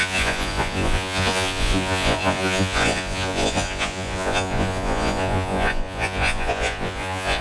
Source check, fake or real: fake